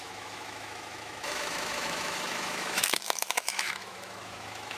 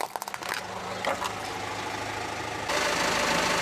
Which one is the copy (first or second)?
first